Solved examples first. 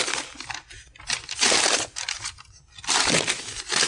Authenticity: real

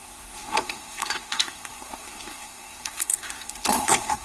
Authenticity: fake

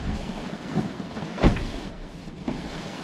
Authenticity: fake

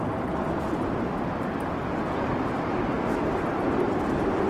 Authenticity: real